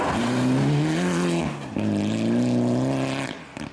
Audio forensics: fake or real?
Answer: real